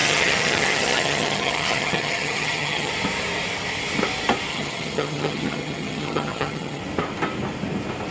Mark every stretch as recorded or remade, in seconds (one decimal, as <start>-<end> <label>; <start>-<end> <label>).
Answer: 0.0-2.9 remade; 2.9-4.5 recorded; 4.5-6.8 remade; 6.8-8.1 recorded